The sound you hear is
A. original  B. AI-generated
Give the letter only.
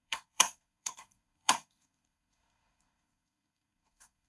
B